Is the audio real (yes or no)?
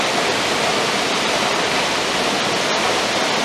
yes